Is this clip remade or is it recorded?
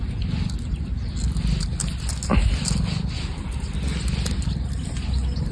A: recorded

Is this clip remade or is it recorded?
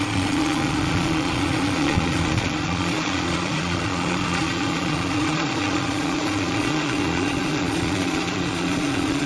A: remade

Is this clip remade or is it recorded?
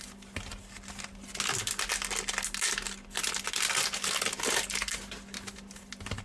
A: recorded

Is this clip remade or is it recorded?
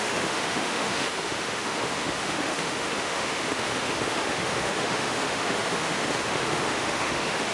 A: remade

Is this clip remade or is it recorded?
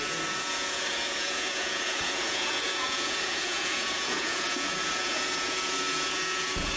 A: remade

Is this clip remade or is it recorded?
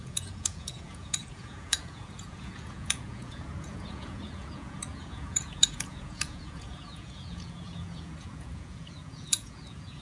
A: remade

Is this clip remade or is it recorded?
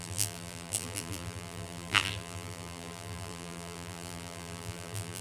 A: remade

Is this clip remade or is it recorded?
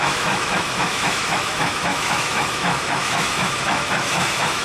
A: remade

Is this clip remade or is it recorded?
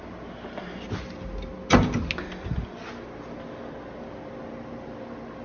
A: recorded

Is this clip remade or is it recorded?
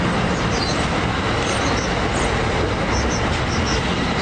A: recorded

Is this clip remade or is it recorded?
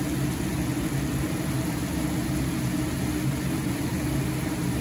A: recorded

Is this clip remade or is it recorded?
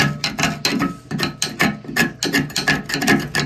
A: recorded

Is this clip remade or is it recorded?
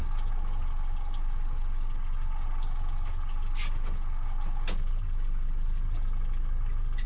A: recorded